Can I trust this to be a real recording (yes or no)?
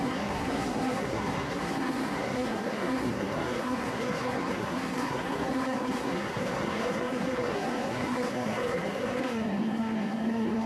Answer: no